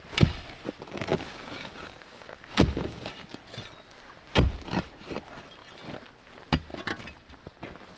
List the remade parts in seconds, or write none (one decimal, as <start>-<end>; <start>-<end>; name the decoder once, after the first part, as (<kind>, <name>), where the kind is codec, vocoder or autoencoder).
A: 1.1-3.1 (codec, DAC)